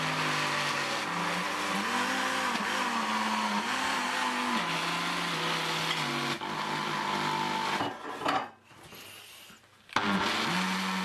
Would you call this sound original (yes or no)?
yes